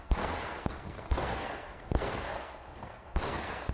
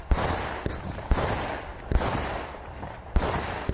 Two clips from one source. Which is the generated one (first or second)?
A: first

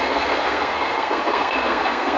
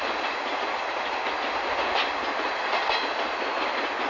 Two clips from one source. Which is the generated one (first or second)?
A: first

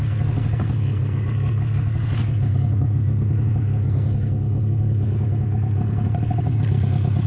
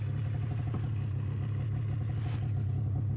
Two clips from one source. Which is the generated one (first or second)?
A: first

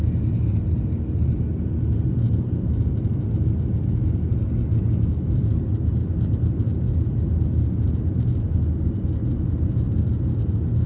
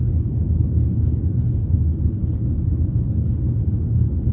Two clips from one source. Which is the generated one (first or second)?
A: second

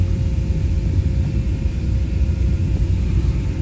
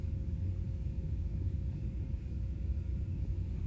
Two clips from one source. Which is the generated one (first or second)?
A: second